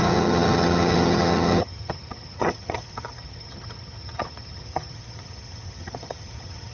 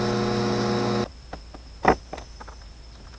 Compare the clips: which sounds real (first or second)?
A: second